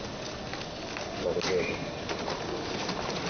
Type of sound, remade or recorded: recorded